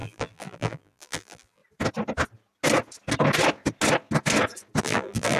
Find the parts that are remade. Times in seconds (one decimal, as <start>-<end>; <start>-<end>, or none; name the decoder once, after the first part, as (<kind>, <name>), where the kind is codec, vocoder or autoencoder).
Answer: 0.0-1.6 (vocoder, BigVGAN v2); 4.8-5.4